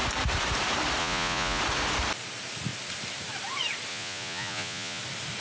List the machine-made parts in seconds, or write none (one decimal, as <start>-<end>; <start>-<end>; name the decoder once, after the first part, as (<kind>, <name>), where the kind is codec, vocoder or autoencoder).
1.0-1.6 (vocoder, Vocos); 3.9-5.0